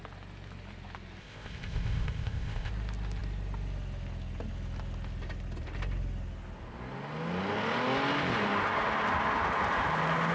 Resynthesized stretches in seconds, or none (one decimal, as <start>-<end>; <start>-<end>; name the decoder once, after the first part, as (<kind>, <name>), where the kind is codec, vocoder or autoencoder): 1.2-2.7 (codec, ZipCodec)